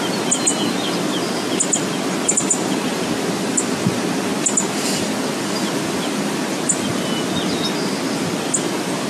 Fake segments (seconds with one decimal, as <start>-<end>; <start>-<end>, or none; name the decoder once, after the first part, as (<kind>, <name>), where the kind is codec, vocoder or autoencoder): none

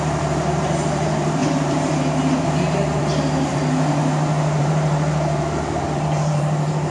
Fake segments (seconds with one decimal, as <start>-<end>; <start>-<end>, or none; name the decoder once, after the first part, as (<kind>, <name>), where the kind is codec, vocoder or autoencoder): 0.0-4.0 (vocoder, BigVGAN v2); 4.6-6.9